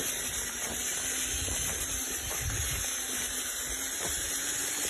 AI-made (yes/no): no